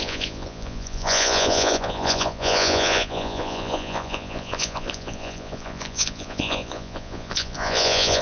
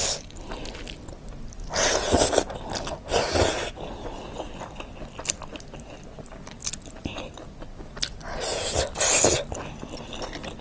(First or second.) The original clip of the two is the second